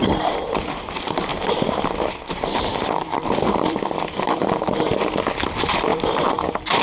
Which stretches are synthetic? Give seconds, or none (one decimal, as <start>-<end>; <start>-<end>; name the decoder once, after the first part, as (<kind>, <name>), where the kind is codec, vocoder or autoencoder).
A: 1.3-4.4 (vocoder, BigVGAN v2); 5.9-6.8